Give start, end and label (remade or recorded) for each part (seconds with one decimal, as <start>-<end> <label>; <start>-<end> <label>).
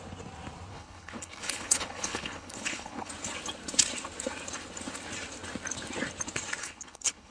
0.0-0.7 recorded; 0.7-3.1 remade; 3.1-6.6 recorded; 6.6-7.3 remade